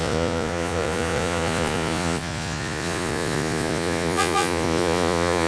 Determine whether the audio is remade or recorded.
remade